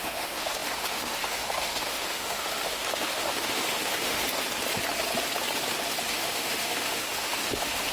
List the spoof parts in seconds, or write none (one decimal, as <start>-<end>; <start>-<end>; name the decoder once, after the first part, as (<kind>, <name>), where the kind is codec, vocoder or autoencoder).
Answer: 0.0-4.2 (autoencoder, DAC-VAE); 6.1-7.9